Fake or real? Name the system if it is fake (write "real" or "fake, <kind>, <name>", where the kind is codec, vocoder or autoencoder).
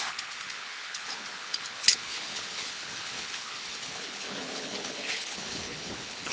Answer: fake, codec, HILCodec